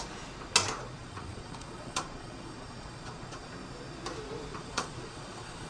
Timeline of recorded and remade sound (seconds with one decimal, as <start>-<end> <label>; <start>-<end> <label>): 0.0-1.0 recorded; 1.0-3.5 remade; 3.5-4.5 recorded; 4.5-5.7 remade